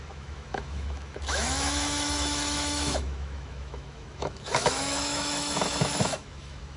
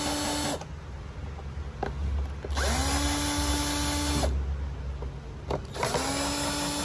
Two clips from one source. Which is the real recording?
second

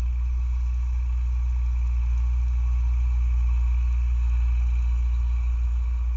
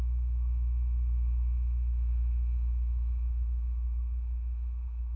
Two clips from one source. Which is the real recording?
first